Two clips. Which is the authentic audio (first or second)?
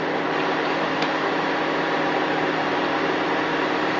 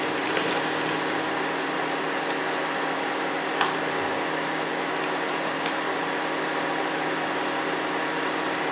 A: second